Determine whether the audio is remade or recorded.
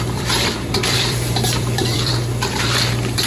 remade